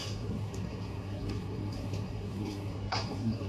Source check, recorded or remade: remade